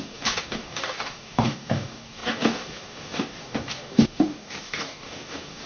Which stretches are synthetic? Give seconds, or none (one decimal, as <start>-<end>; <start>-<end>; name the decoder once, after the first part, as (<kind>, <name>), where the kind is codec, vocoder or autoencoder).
0.0-5.7 (codec, DAC)